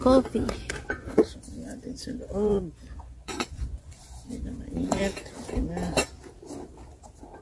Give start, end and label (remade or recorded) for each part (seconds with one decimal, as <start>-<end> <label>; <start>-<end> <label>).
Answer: 0.0-0.6 recorded; 0.6-5.0 remade; 5.0-7.4 recorded

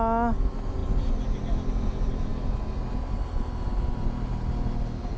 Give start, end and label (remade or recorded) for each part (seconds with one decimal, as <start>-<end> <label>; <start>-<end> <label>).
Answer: 0.0-5.2 recorded

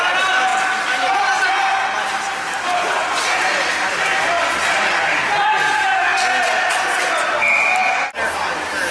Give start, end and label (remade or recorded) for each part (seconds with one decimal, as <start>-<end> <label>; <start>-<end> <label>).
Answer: 0.0-8.9 recorded

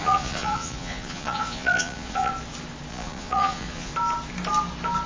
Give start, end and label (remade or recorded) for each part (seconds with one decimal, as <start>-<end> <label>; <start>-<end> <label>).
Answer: 0.0-2.3 remade; 2.3-2.9 recorded; 2.9-3.9 remade; 3.9-5.1 recorded